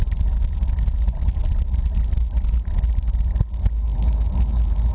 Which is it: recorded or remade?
recorded